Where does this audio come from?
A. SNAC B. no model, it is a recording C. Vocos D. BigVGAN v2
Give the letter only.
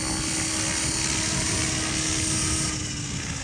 B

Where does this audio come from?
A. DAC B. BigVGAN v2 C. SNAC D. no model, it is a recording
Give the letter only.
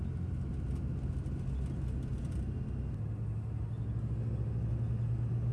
D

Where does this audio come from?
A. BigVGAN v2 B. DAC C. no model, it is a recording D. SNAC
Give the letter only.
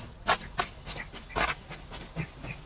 C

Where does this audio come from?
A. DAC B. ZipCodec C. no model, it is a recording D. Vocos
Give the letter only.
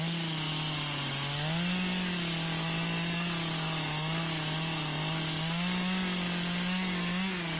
C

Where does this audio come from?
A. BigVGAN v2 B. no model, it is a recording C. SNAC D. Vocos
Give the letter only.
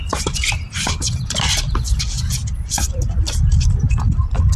A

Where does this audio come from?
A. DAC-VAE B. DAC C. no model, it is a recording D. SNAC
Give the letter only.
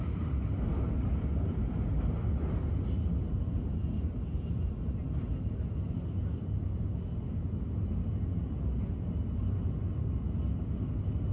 C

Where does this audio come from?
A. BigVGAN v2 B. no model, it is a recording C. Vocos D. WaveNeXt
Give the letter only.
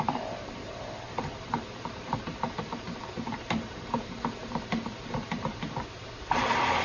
A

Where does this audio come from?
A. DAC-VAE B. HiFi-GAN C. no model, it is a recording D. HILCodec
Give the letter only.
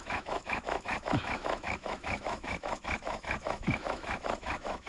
A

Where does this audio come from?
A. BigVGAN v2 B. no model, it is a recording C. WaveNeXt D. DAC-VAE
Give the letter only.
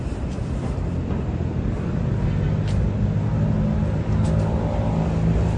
B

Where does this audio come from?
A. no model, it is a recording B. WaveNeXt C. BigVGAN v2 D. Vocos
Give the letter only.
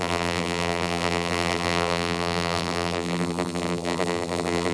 C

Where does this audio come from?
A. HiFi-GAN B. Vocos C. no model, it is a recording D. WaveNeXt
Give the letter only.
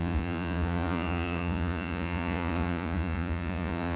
B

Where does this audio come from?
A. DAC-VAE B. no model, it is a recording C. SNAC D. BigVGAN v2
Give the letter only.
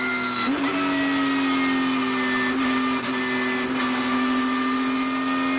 B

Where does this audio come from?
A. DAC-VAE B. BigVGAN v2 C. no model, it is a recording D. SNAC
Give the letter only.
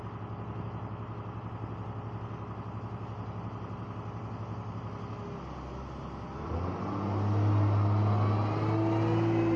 C